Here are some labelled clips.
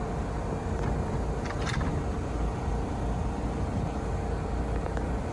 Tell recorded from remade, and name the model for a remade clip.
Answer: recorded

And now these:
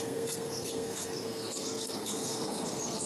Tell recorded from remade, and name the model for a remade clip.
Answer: remade, codec, SNAC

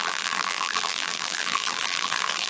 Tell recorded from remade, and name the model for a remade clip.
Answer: remade, vocoder, BigVGAN v2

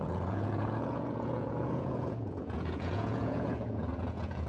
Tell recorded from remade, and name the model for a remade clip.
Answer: remade, vocoder, Vocos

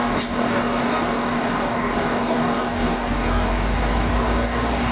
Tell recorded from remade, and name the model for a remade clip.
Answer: remade, codec, DAC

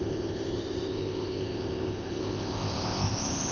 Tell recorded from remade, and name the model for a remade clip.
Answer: remade, codec, ZipCodec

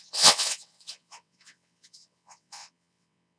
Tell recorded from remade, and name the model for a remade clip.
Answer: remade, vocoder, WaveNeXt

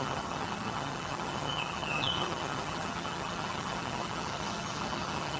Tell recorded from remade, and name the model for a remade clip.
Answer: remade, vocoder, HiFi-GAN